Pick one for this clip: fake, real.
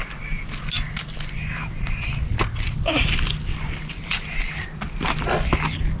real